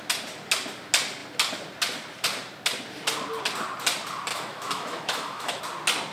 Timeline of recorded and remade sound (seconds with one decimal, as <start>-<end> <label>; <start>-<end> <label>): 0.0-4.3 recorded; 4.3-5.6 remade; 5.6-6.1 recorded